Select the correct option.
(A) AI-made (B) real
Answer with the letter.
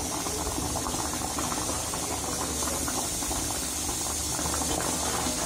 B